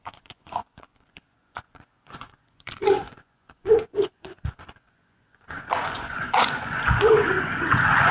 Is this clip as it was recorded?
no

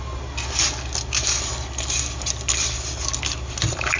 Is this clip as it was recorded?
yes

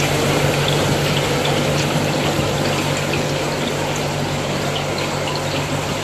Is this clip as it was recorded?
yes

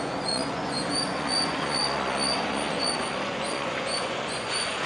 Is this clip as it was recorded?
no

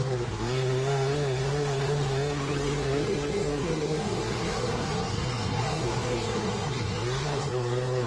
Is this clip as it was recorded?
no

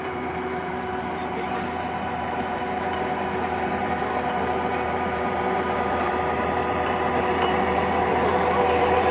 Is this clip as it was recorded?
no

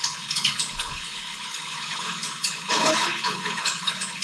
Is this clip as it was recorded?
no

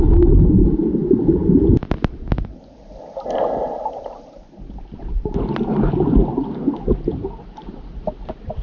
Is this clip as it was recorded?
yes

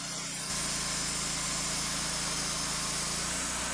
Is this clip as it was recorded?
yes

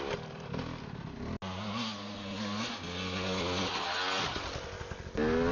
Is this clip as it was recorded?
yes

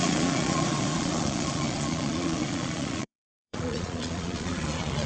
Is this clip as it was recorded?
no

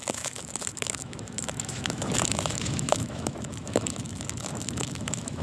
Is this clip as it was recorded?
no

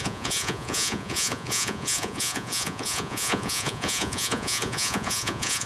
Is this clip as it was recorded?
no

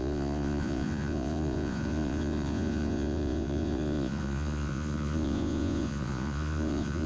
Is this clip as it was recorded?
no